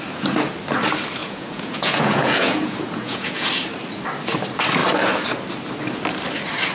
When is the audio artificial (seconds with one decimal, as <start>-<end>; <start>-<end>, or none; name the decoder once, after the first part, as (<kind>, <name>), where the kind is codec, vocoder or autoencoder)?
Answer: 1.2-3.5 (vocoder, Vocos)